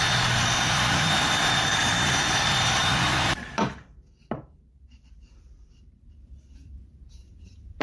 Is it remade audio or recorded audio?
remade